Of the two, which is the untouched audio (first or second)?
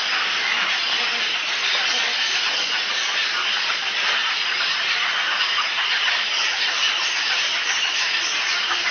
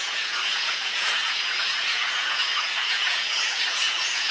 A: first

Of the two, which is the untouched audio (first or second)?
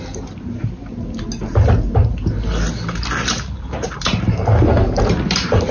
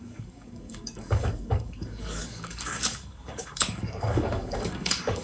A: first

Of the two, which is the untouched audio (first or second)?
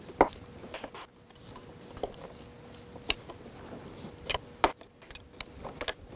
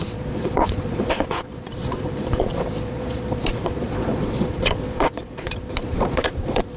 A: first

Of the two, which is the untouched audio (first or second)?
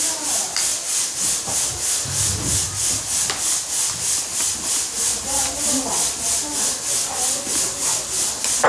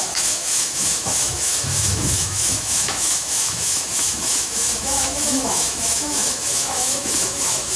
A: first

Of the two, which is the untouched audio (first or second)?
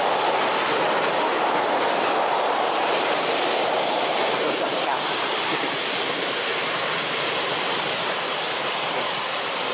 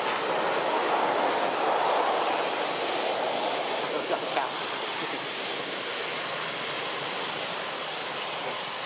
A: second